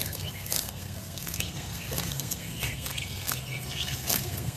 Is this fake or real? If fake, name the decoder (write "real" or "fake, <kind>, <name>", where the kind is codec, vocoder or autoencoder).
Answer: fake, codec, SNAC